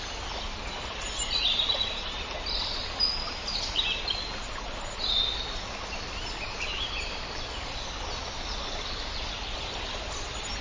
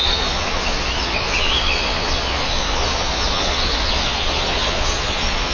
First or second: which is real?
first